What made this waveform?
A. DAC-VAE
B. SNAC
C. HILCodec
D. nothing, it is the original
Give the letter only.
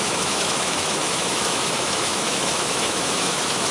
A